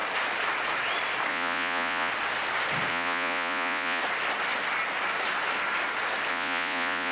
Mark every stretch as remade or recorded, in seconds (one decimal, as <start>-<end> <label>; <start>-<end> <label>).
0.0-1.3 recorded; 1.3-2.1 remade; 2.1-2.9 recorded; 2.9-4.0 remade; 4.0-6.3 recorded; 6.3-7.1 remade